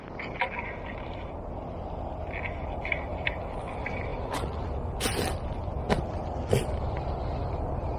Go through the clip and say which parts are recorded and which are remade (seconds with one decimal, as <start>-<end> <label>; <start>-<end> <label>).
0.0-8.0 recorded